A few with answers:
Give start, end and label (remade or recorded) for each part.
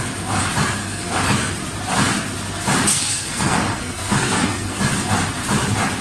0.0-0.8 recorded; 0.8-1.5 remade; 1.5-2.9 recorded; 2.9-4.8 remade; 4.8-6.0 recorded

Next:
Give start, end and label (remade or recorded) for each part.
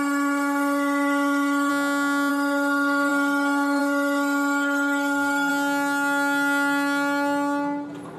0.0-1.7 remade; 1.7-2.3 recorded; 2.3-5.5 remade; 5.5-8.2 recorded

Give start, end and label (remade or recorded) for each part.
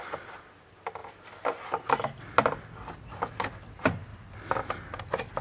0.0-5.4 recorded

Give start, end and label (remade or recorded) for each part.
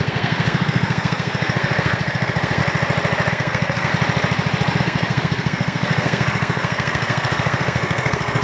0.0-2.6 remade; 2.6-3.3 recorded; 3.3-3.9 remade; 3.9-4.8 recorded; 4.8-8.4 remade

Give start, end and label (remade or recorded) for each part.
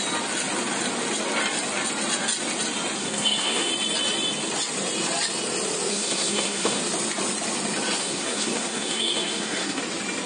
0.0-3.0 recorded; 3.0-3.7 remade; 3.7-5.9 recorded; 5.9-6.8 remade; 6.8-8.0 recorded; 8.0-9.8 remade; 9.8-10.3 recorded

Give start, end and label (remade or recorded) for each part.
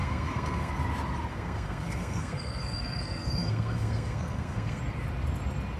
0.0-0.7 remade; 0.7-1.3 recorded; 1.3-4.8 remade; 4.8-5.8 recorded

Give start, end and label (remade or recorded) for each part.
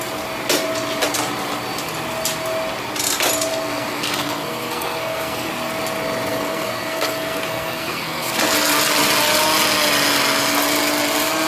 0.0-3.5 recorded; 3.5-5.5 remade; 5.5-6.3 recorded; 6.3-8.3 remade; 8.3-11.5 recorded